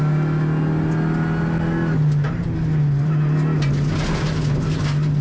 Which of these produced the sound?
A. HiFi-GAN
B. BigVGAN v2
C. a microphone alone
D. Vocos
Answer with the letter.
C